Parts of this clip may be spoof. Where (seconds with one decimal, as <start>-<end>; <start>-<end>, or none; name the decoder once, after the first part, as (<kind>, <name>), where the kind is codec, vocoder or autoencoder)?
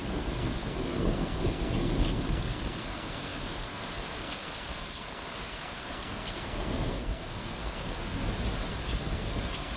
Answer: 0.0-8.2 (codec, SNAC); 8.7-9.8